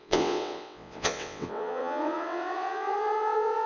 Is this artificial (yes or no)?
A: yes